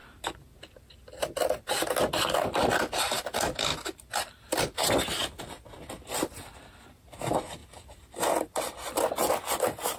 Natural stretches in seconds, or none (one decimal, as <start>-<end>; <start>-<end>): 0.0-10.0